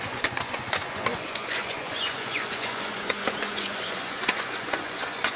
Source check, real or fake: fake